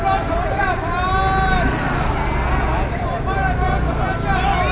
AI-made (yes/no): no